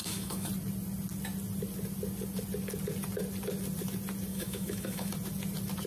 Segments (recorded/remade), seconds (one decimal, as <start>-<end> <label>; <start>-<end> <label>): 0.0-0.5 remade; 0.5-4.3 recorded; 4.3-5.1 remade; 5.1-5.9 recorded